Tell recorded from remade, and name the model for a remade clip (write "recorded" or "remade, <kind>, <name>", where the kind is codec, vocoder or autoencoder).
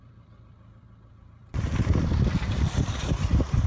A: remade, vocoder, BigVGAN v2